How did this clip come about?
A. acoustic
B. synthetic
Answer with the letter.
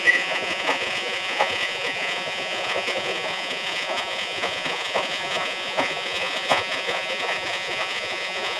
B